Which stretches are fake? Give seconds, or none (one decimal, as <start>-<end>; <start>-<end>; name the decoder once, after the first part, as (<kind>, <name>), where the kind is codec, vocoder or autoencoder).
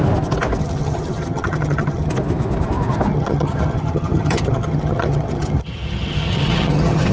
0.6-2.1 (vocoder, HiFi-GAN); 3.1-7.1